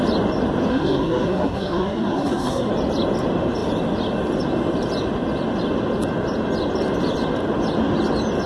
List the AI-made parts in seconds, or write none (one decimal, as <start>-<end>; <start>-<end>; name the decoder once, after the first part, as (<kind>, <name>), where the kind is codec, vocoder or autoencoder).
0.7-2.7 (codec, SNAC)